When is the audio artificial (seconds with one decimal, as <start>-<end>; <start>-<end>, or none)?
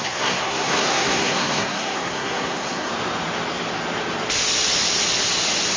0.0-2.9